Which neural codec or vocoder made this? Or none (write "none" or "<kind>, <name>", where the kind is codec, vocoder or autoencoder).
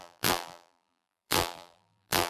vocoder, BigVGAN v2